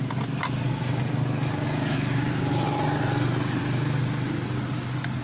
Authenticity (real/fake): real